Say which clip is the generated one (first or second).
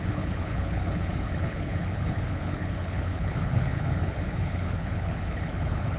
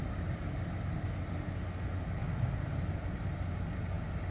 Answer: first